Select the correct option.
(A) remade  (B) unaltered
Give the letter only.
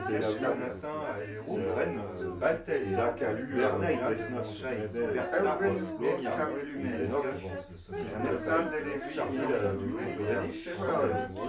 B